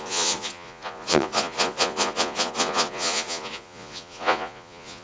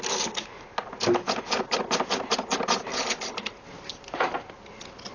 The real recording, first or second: second